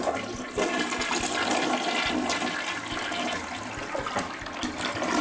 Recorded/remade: recorded